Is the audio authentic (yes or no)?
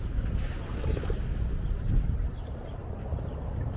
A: yes